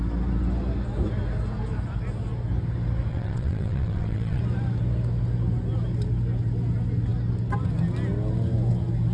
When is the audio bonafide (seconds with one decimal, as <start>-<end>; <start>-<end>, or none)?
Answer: 0.0-3.1; 4.4-9.1